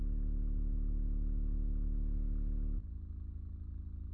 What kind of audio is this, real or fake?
real